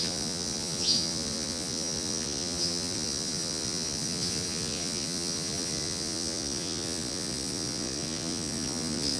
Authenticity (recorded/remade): remade